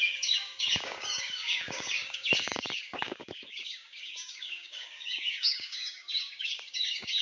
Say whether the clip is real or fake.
fake